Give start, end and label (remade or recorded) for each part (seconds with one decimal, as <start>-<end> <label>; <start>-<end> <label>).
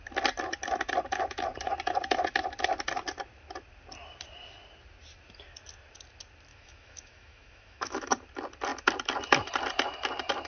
0.0-6.5 recorded; 6.5-8.1 remade; 8.1-10.5 recorded